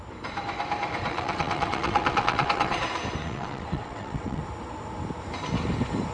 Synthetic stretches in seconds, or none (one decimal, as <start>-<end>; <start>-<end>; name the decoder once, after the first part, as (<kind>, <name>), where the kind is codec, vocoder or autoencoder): 1.1-2.8 (vocoder, WaveNeXt); 3.2-4.4